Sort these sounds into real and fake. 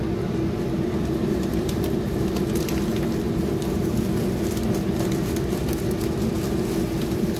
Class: real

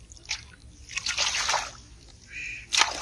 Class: real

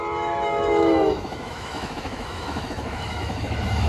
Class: fake